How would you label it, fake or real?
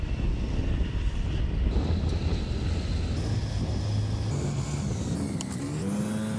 real